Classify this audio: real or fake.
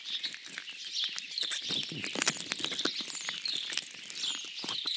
real